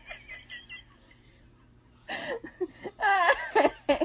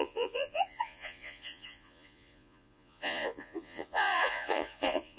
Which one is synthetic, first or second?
second